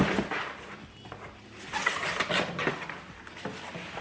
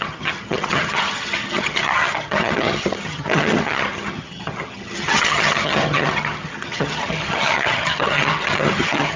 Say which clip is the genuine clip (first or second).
first